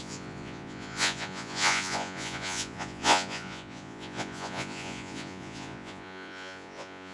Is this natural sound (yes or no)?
no